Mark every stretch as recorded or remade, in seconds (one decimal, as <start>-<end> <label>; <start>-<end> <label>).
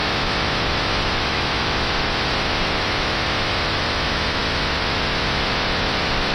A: 0.0-6.3 remade